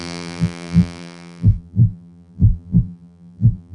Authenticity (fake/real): fake